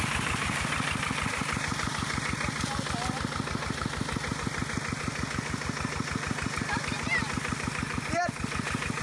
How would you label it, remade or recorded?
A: recorded